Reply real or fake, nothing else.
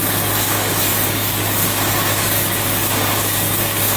fake